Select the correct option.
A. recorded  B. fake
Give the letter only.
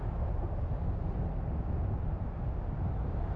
A